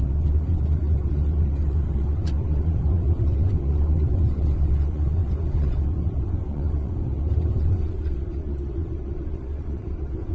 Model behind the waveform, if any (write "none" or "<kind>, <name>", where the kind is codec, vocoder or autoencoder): vocoder, WaveNeXt